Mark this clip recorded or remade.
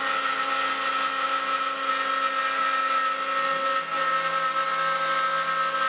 recorded